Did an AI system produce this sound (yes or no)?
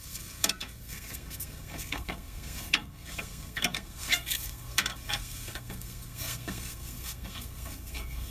yes